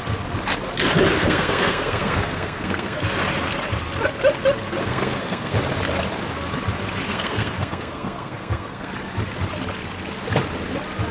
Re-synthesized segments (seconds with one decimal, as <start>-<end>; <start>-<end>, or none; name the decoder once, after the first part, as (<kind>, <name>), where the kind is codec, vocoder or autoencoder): 1.2-3.0 (codec, SNAC); 4.8-5.6; 7.1-8.9